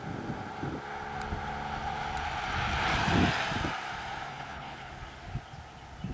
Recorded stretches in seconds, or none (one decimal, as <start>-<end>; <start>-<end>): 0.0-4.3; 4.9-6.1